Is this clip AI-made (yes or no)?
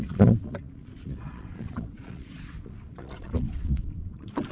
yes